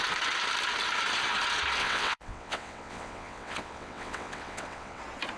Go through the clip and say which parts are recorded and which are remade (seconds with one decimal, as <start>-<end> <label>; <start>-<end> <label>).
0.0-1.8 recorded; 1.8-5.0 remade; 5.0-5.4 recorded